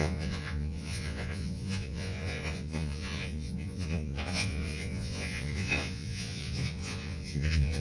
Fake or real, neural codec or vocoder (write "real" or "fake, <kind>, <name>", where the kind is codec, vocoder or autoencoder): fake, vocoder, Vocos